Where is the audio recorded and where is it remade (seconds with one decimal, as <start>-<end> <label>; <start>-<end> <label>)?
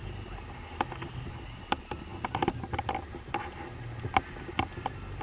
0.0-5.2 recorded